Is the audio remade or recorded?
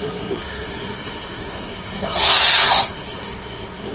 remade